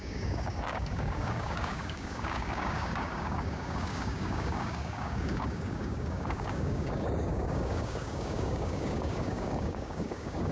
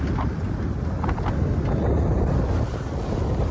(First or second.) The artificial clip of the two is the first